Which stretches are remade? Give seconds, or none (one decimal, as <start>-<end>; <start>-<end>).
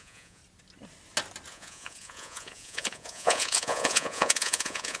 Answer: 0.0-0.4; 1.5-5.0